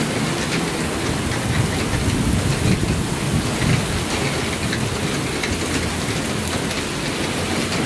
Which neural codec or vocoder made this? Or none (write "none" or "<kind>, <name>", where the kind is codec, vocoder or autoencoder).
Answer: none